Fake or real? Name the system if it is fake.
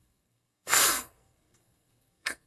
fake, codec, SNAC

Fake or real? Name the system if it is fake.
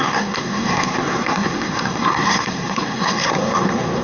fake, codec, SNAC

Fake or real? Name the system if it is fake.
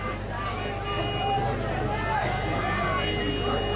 real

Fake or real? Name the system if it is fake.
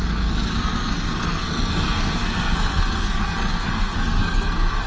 fake, codec, SNAC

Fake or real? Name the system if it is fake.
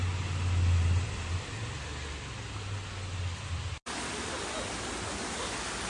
real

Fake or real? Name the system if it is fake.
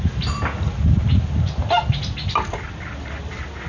real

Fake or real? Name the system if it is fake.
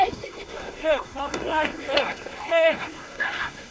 fake, codec, SNAC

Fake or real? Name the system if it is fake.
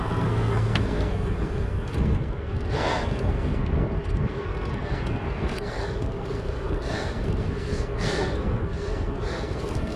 fake, codec, SNAC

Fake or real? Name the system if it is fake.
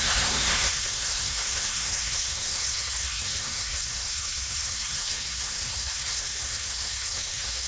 fake, codec, SNAC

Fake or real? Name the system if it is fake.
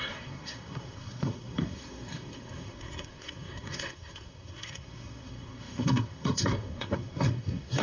fake, codec, SNAC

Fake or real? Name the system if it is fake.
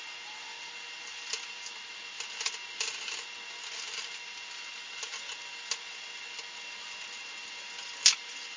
real